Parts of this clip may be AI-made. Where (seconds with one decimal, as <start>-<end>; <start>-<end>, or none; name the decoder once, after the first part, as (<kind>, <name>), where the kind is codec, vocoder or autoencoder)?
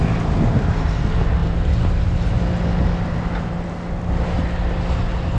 none